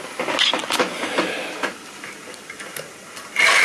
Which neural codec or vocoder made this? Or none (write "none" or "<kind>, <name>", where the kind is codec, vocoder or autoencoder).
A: none